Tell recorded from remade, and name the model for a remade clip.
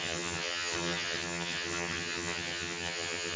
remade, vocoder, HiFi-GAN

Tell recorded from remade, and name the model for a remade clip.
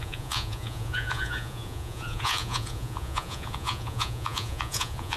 remade, vocoder, Vocos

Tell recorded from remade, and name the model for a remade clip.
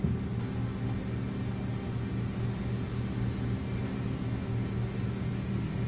recorded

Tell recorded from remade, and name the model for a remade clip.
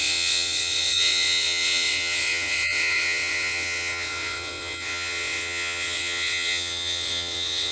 remade, vocoder, WaveNeXt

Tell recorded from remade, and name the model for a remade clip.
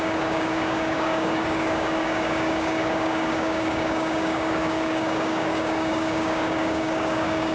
remade, codec, DAC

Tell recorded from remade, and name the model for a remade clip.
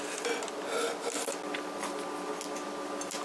recorded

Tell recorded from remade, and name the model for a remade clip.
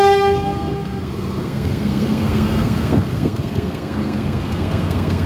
remade, codec, SNAC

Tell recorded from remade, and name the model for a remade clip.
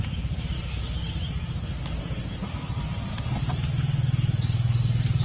recorded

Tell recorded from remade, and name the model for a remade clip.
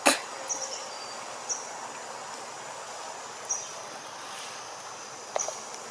recorded